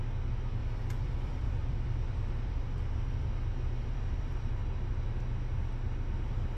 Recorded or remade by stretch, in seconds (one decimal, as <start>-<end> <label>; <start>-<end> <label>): 0.0-0.6 recorded; 0.6-4.5 remade; 4.5-6.6 recorded